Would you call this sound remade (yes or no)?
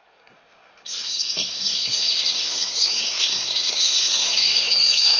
yes